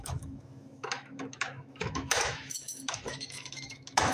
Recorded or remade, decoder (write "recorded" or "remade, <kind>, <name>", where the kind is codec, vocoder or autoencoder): remade, autoencoder, DAC-VAE